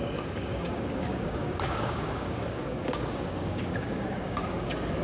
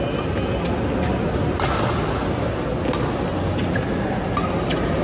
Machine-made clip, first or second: first